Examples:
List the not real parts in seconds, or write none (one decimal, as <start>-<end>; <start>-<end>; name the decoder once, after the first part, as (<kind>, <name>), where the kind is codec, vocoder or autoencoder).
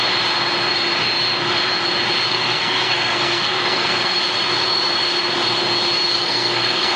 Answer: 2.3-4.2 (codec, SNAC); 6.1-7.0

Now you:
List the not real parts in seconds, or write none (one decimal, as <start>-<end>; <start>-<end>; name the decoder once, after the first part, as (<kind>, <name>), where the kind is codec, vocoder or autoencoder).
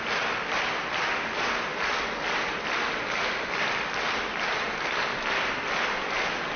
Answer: none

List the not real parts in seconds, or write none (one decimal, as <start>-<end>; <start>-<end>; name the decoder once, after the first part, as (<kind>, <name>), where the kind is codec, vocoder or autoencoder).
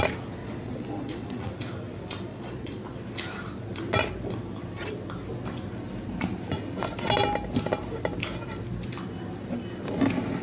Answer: 0.4-1.5 (vocoder, Vocos); 2.3-3.0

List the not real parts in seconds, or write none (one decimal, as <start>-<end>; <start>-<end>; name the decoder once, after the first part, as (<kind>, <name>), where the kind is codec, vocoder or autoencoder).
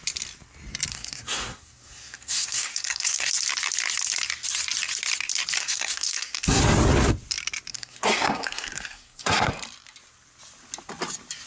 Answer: 0.9-3.3 (codec, SNAC); 5.6-6.6; 7.7-9.5